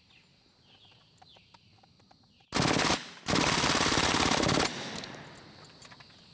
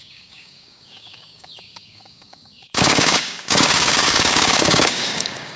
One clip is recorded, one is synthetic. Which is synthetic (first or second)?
second